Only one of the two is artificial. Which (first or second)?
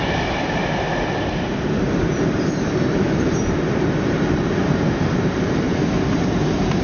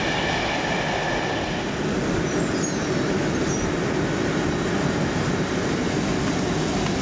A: first